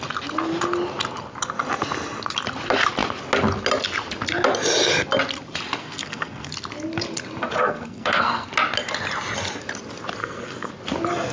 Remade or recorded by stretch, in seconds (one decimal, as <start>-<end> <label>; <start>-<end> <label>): 0.0-5.8 recorded; 5.8-6.5 remade; 6.5-7.6 recorded; 7.6-8.5 remade; 8.5-10.2 recorded; 10.2-10.7 remade; 10.7-11.3 recorded